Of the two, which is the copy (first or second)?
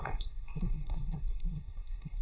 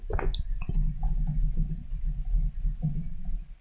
first